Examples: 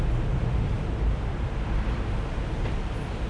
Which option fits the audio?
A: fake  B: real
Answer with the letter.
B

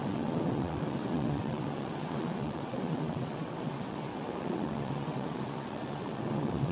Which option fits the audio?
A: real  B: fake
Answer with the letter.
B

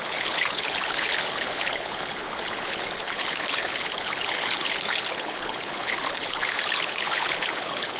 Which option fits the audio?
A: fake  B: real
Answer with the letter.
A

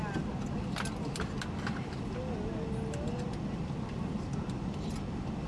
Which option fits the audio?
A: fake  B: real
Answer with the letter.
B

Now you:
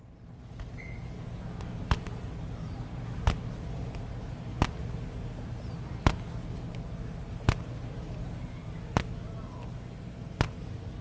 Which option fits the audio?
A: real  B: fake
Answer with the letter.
A